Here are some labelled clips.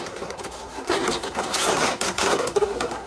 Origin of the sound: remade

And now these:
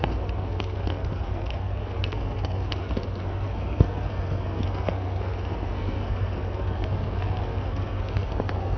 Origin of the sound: remade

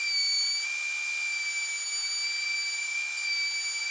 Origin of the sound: recorded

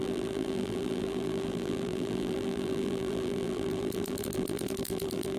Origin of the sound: remade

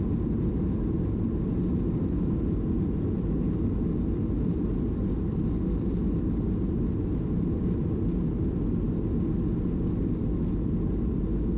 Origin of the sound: recorded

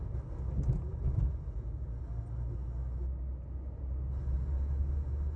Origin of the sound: recorded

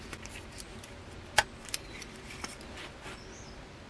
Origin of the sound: recorded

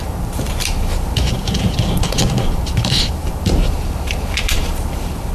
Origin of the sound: remade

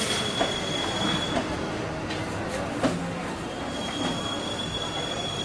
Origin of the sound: recorded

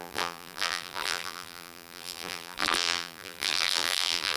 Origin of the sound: remade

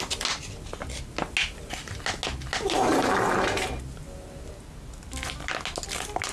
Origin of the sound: recorded